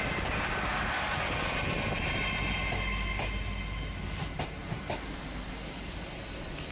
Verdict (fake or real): real